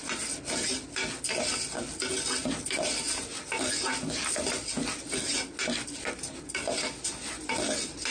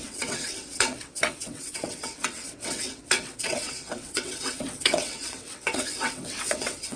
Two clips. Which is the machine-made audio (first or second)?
second